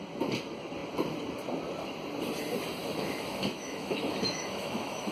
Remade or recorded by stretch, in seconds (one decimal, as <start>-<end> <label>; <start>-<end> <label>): 0.0-2.8 recorded; 2.8-5.1 remade